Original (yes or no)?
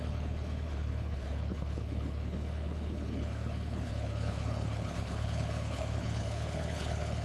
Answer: no